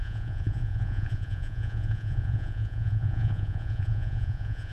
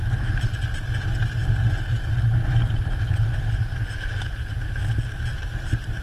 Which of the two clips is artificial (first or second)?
first